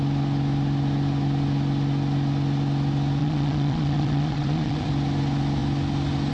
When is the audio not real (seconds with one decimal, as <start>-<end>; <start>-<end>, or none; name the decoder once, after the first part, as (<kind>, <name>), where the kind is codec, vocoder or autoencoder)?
3.2-4.9 (vocoder, Vocos)